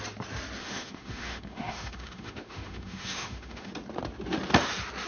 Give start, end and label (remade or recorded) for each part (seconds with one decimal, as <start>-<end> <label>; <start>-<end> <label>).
0.0-0.6 recorded; 0.6-3.7 remade; 3.7-5.1 recorded

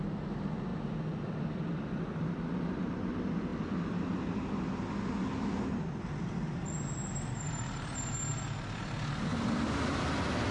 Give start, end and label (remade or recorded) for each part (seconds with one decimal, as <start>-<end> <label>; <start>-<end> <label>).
0.0-10.5 recorded

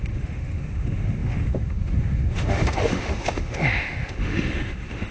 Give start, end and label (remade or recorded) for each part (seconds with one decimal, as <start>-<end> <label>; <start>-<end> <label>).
0.0-5.1 remade